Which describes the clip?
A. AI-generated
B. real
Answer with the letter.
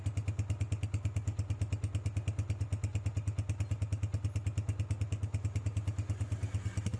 B